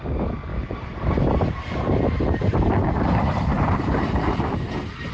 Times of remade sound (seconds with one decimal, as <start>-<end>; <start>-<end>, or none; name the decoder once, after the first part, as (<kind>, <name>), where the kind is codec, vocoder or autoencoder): 0.5-1.8 (vocoder, BigVGAN v2); 3.5-5.1